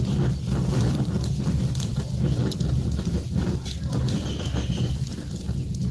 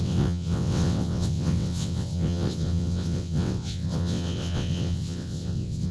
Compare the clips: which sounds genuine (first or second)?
first